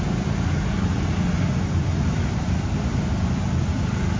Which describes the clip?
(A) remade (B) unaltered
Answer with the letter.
B